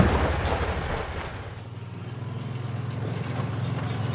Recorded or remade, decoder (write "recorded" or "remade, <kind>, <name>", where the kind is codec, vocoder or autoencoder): recorded